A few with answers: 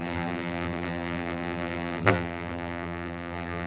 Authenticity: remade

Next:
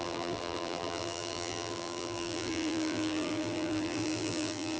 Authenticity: remade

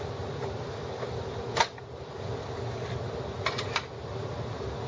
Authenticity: recorded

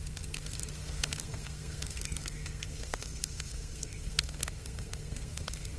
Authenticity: remade